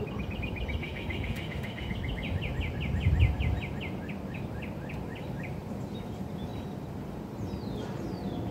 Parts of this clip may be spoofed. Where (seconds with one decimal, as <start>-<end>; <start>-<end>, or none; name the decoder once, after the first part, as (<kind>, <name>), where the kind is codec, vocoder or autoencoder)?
0.8-1.9 (autoencoder, DAC-VAE)